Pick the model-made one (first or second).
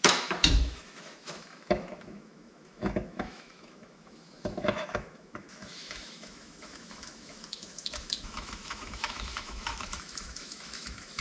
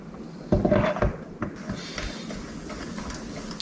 first